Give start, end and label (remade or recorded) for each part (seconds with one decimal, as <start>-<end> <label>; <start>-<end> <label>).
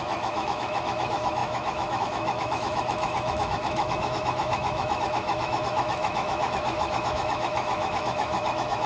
0.0-8.9 remade